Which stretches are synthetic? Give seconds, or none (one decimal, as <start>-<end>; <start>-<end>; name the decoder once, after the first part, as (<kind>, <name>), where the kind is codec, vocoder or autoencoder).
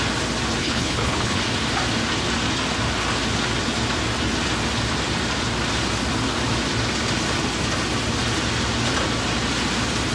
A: 0.6-1.4 (codec, HILCodec)